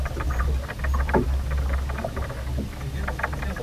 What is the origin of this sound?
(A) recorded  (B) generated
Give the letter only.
A